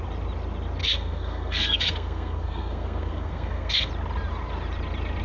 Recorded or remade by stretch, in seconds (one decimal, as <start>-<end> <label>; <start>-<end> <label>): 0.0-0.8 recorded; 0.8-3.9 remade; 3.9-5.2 recorded